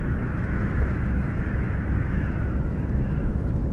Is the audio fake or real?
fake